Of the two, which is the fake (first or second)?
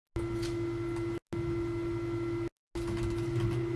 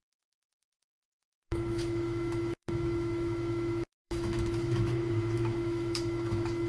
second